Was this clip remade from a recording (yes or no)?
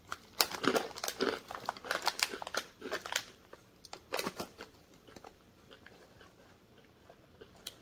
yes